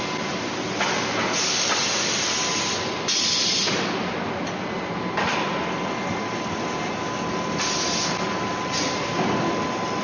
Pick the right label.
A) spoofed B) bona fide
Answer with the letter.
B